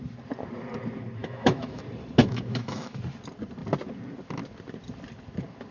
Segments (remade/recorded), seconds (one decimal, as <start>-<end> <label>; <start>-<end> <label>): 0.0-1.2 recorded; 1.2-1.8 remade; 1.8-2.2 recorded; 2.2-3.0 remade; 3.0-5.7 recorded